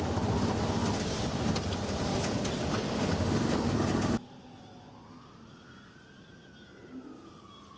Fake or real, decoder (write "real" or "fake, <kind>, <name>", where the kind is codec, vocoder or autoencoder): real